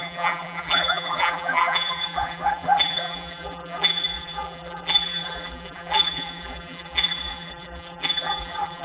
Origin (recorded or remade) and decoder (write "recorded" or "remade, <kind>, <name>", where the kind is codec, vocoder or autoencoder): remade, vocoder, BigVGAN v2